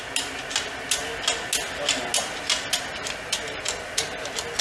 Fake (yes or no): no